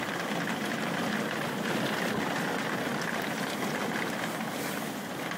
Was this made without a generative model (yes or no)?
yes